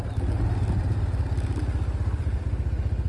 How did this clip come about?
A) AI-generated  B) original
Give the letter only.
B